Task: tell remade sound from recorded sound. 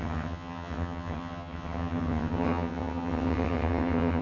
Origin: remade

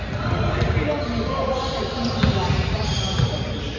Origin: recorded